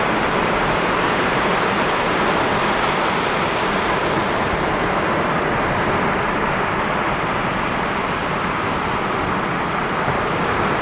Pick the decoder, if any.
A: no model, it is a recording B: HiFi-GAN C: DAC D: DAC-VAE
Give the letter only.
A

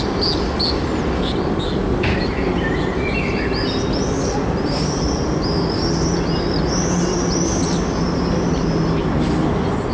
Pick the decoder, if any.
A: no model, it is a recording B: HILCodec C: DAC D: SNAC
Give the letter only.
A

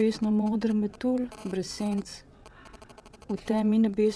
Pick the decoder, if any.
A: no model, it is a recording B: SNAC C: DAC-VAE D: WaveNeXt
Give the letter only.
D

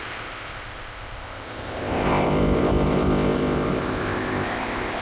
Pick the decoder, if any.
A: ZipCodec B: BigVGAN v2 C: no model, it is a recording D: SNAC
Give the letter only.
A